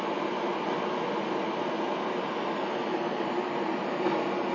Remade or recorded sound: recorded